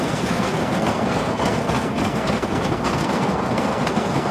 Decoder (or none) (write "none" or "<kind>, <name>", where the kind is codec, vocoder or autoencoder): codec, SNAC